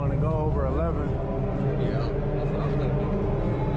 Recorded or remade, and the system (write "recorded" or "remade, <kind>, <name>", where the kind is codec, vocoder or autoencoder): recorded